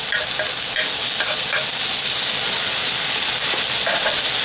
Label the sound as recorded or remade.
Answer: recorded